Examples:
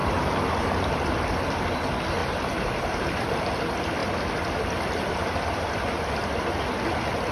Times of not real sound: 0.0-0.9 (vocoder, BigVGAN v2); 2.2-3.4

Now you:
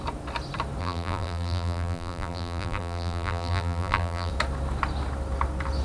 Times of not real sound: 0.8-4.3 (vocoder, BigVGAN v2)

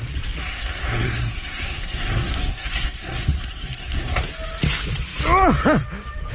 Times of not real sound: 0.4-4.2 (codec, SNAC)

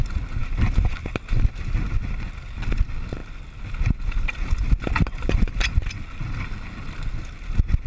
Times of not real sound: none

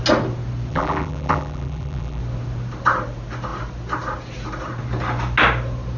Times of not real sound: 0.7-2.2 (vocoder, BigVGAN v2)

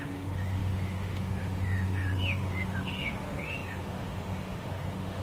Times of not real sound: 0.0-5.2 (autoencoder, DAC-VAE)

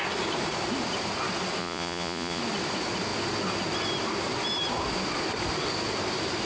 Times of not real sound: 1.6-2.4 (vocoder, Vocos)